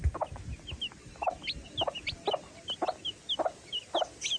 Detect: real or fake real